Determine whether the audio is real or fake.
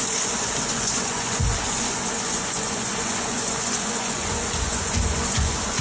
fake